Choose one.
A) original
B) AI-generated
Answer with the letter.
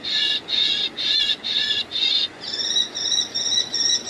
B